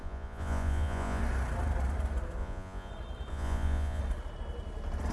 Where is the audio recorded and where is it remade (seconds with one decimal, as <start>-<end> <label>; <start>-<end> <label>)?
0.0-1.2 remade; 1.2-2.4 recorded; 2.4-2.9 remade; 2.9-3.3 recorded; 3.3-4.0 remade; 4.0-5.1 recorded